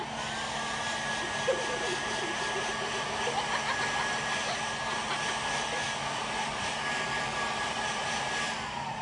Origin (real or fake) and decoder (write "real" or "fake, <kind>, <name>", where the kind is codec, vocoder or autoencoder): real